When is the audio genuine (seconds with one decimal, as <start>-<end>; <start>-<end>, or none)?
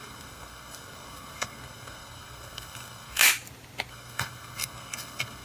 3.2-3.9